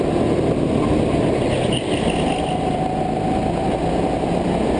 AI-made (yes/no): no